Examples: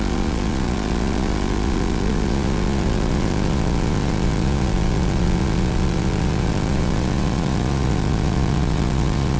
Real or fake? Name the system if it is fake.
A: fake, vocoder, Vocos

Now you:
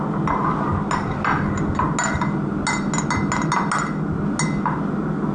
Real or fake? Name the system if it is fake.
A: real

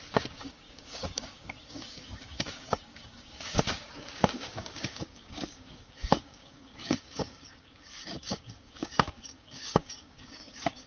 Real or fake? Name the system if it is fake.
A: fake, codec, DAC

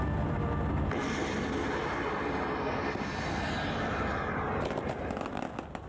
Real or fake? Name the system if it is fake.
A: real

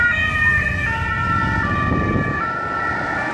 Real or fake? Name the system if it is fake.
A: real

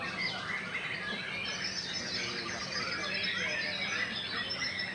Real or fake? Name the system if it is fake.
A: real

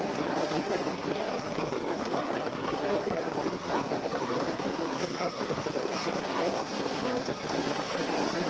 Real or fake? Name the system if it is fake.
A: fake, codec, SNAC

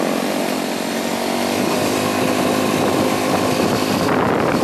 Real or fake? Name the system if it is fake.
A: real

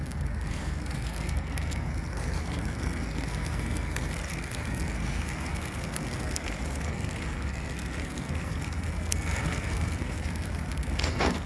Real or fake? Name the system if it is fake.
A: fake, codec, SNAC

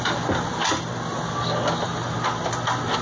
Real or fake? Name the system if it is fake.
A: real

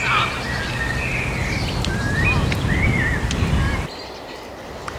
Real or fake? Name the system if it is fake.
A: real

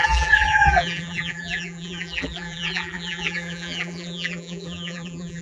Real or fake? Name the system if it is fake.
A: fake, vocoder, BigVGAN v2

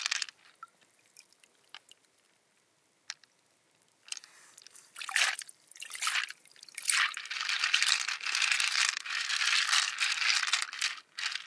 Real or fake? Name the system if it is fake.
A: real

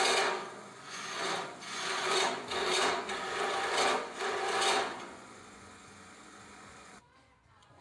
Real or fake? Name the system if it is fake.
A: fake, vocoder, Vocos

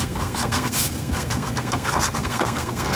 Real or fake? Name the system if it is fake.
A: fake, codec, SNAC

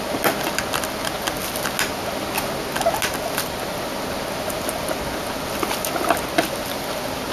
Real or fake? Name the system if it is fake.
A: real